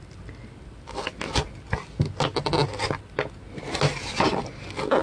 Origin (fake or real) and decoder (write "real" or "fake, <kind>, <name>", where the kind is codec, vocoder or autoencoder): real